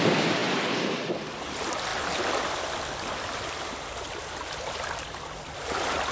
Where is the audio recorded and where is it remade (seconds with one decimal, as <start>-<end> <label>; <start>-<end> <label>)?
0.0-6.1 recorded